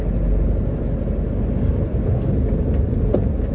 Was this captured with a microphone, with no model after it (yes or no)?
yes